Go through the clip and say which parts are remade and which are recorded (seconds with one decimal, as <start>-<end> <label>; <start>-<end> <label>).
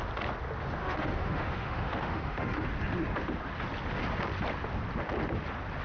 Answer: 0.0-0.8 recorded; 0.8-2.7 remade; 2.7-5.8 recorded